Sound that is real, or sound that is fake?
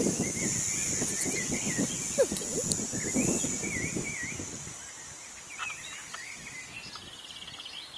real